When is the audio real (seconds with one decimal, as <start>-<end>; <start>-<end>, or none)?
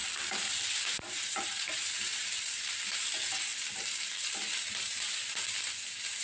none